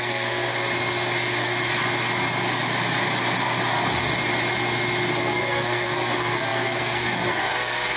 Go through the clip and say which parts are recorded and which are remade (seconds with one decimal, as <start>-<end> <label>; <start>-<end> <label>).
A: 0.0-0.5 remade; 0.5-5.2 recorded; 5.2-8.0 remade